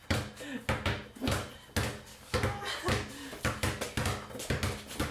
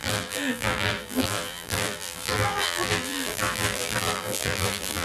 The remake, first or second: second